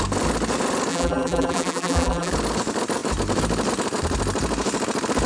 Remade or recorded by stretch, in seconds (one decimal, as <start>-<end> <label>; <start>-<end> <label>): 0.0-0.9 recorded; 0.9-2.3 remade; 2.3-5.3 recorded